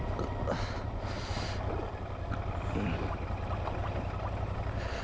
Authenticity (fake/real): real